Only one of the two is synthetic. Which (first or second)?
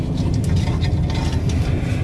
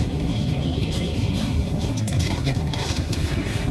second